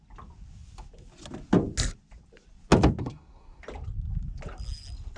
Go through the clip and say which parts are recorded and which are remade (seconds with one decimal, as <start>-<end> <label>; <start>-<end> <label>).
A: 0.0-3.0 recorded; 3.0-3.6 remade; 3.6-5.2 recorded